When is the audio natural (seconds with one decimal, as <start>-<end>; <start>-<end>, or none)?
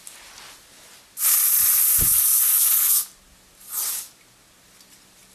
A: 0.0-5.3